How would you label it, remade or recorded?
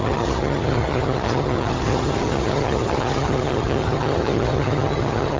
remade